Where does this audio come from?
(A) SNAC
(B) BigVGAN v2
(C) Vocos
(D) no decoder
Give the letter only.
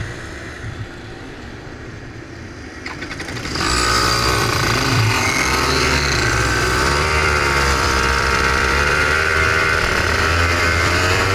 B